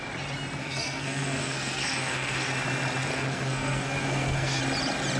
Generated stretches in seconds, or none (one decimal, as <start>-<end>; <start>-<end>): 0.6-2.5; 3.1-4.6